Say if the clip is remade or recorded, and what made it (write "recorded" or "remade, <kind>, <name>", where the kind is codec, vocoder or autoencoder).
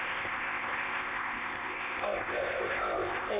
remade, codec, ZipCodec